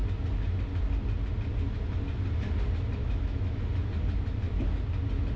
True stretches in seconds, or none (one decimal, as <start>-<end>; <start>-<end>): 0.0-3.0; 3.6-5.4